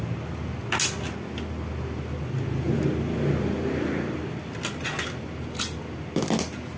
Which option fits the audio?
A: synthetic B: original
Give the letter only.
B